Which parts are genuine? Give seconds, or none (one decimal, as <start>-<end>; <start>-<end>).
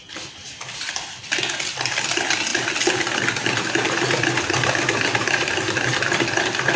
0.0-2.5